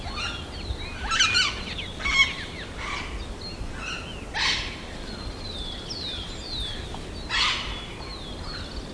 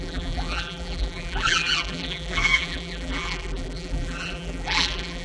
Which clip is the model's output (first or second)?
second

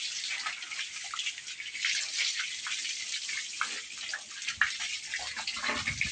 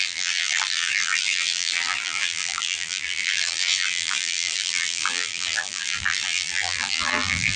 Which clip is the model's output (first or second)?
second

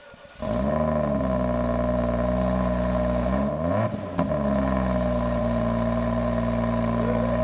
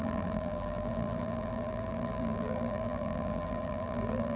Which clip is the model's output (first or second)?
second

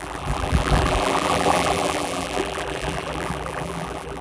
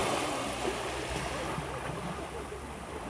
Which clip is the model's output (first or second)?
first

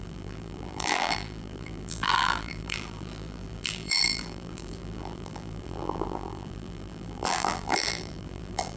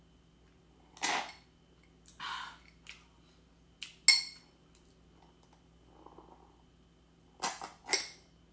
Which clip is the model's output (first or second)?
first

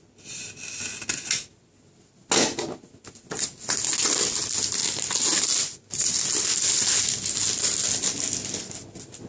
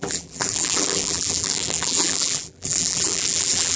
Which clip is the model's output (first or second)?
second